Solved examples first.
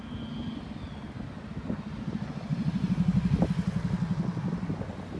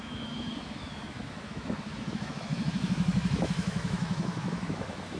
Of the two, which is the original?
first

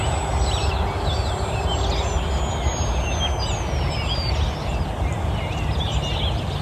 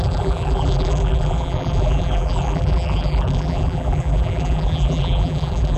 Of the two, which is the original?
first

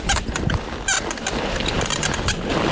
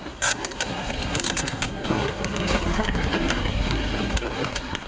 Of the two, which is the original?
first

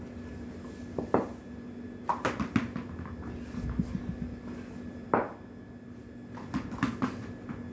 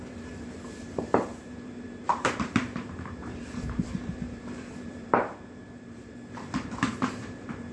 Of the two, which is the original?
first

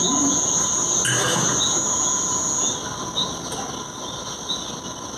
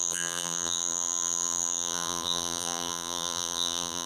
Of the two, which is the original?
first